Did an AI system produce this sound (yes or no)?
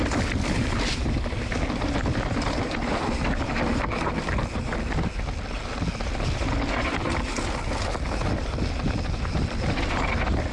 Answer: no